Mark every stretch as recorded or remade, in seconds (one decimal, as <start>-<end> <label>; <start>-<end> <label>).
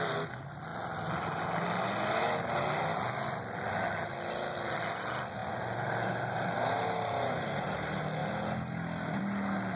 0.0-9.8 recorded